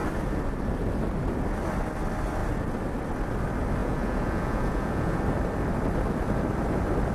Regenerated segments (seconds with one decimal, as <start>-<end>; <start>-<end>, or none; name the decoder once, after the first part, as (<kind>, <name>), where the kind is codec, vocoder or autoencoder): 3.8-5.2 (vocoder, Vocos)